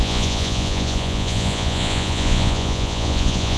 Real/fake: fake